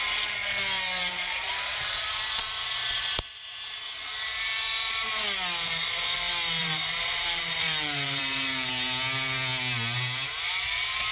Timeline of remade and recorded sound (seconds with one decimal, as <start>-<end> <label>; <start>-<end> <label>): 0.0-1.0 recorded; 1.0-5.1 remade; 5.1-6.6 recorded; 6.6-8.7 remade; 8.7-11.1 recorded